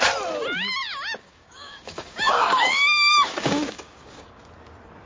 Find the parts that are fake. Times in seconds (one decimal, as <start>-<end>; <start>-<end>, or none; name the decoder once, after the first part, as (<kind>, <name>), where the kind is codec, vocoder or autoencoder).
1.2-4.3 (codec, DAC)